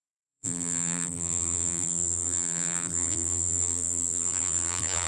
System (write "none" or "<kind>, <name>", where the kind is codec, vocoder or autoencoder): vocoder, BigVGAN v2